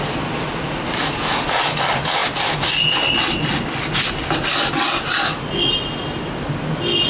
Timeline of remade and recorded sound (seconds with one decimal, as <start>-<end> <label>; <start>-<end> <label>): 0.0-7.1 recorded